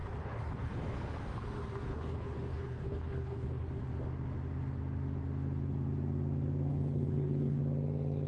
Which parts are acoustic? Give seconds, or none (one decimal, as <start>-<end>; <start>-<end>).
0.7-1.9; 3.7-6.7; 7.6-8.3